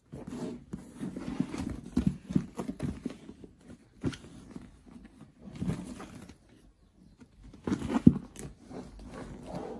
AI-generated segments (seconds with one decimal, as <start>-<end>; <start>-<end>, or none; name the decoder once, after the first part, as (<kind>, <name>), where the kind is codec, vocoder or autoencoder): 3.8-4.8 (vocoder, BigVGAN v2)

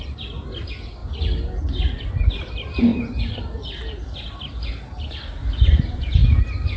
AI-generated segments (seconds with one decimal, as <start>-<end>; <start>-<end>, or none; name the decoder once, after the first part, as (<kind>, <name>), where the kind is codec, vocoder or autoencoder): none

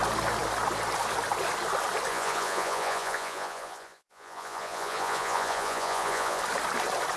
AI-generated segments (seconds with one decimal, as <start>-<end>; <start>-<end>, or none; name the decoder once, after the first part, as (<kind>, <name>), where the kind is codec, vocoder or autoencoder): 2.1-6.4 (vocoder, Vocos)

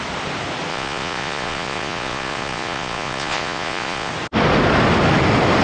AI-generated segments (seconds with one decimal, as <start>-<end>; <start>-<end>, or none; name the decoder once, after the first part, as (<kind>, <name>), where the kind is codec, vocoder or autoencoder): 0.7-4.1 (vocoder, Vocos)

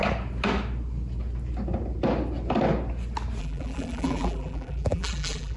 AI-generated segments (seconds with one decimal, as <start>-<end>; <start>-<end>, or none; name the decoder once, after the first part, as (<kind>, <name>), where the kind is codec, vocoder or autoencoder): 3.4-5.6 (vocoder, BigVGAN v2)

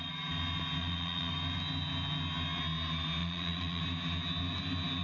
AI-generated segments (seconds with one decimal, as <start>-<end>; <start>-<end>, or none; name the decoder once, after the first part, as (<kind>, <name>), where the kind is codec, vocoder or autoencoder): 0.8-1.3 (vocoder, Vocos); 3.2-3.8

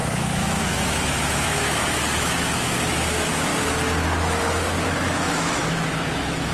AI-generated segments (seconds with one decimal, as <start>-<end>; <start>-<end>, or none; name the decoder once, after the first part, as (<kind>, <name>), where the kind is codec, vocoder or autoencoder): 0.0-3.5 (autoencoder, DAC-VAE); 4.4-6.5